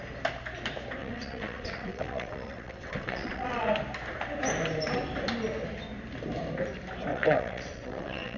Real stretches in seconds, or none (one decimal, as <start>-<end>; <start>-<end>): 0.0-1.0; 3.7-7.1